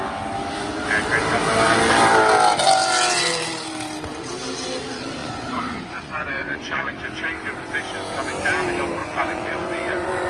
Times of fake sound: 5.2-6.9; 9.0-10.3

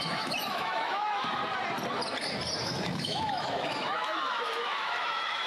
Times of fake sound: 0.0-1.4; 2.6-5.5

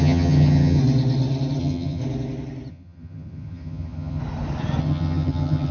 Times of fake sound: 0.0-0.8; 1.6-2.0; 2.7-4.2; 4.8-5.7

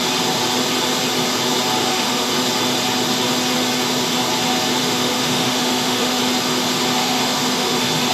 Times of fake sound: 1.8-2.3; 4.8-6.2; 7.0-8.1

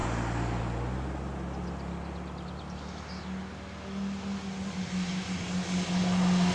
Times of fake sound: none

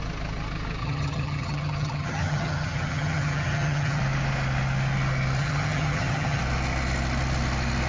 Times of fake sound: 0.8-4.0; 5.4-6.4